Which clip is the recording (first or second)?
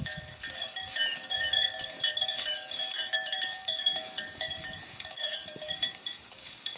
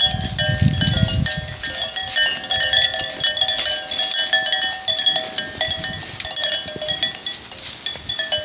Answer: second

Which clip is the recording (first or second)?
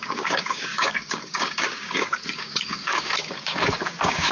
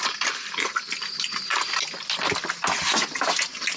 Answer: second